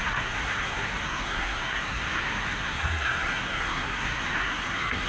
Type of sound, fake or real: fake